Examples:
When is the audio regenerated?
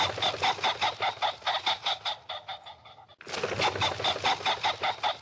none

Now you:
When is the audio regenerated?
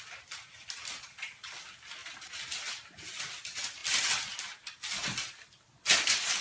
0.9-1.5 (vocoder, Vocos)